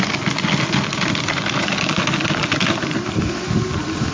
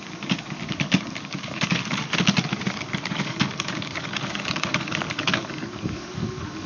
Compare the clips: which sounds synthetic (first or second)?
second